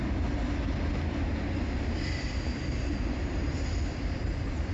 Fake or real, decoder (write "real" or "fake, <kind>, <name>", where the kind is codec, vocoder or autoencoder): real